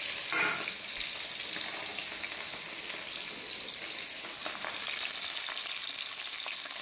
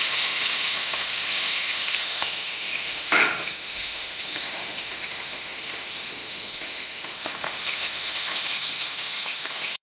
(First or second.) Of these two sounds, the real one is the first